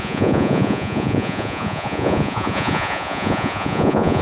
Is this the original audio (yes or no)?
no